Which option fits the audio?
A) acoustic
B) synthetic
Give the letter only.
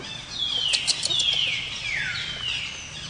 A